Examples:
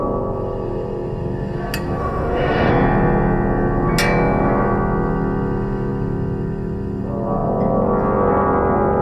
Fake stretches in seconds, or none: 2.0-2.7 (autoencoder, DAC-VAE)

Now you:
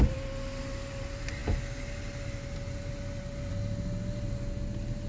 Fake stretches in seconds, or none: none

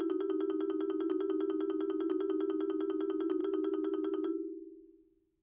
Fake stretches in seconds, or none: 3.4-5.0 (autoencoder, DAC-VAE)

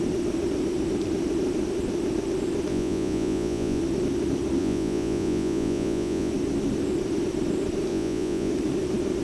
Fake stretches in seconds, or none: 2.7-3.8 (vocoder, Vocos); 4.6-6.3; 7.9-8.5

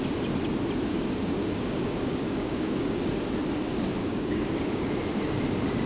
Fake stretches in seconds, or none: 0.9-3.0 (codec, DAC); 4.0-4.9

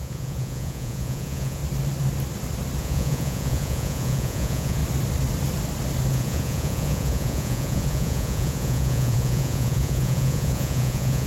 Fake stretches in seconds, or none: 0.0-1.6 (vocoder, Vocos); 2.8-4.8; 6.1-11.3

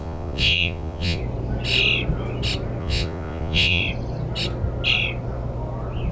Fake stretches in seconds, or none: 0.0-1.2 (vocoder, Vocos); 2.8-3.8